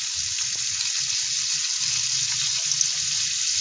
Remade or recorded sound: recorded